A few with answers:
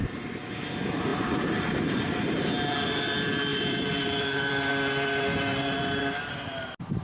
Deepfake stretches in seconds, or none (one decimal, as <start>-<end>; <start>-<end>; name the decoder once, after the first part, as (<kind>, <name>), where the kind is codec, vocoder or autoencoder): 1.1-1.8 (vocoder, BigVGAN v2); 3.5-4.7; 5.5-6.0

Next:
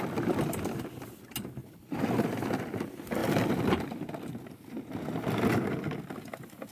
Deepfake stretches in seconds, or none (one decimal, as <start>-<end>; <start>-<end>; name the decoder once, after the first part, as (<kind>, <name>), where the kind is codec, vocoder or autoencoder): none

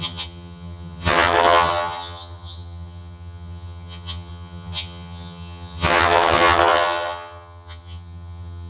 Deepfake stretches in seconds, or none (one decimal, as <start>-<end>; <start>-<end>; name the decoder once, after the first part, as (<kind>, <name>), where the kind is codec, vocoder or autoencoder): 0.0-8.7 (vocoder, HiFi-GAN)

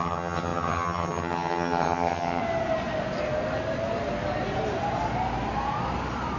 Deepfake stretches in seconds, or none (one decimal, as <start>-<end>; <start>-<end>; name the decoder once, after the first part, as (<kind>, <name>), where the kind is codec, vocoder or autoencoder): 0.0-2.4 (vocoder, HiFi-GAN)

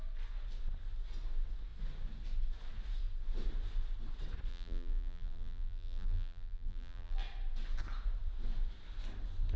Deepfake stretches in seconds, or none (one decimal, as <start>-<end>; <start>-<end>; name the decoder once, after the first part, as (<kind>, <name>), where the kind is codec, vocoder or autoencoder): 4.5-7.2 (vocoder, BigVGAN v2)